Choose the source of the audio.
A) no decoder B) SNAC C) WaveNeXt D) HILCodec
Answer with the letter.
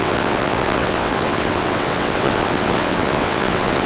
C